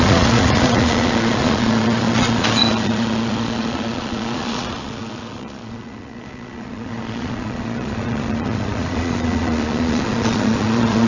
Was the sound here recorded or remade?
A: remade